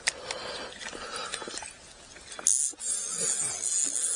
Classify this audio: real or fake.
real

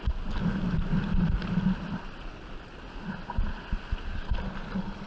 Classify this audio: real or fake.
real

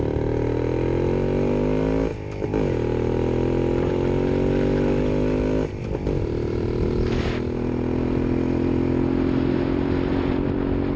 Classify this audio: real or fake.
fake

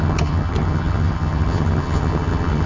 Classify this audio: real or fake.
fake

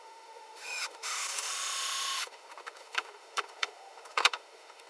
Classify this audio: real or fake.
fake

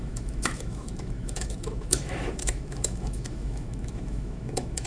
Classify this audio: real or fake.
fake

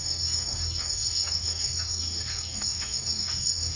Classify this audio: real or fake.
fake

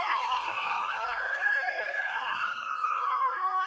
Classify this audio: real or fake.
fake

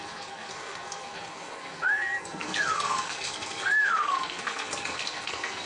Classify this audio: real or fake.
fake